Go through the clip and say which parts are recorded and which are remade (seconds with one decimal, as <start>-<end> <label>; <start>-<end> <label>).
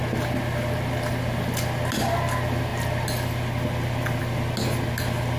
0.0-5.4 recorded